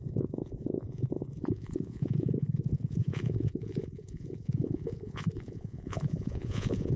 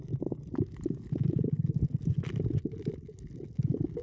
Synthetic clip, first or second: first